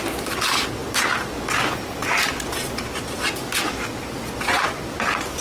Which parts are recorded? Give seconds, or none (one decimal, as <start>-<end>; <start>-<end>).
0.0-5.4